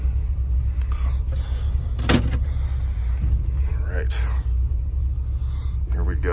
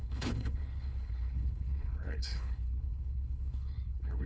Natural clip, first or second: first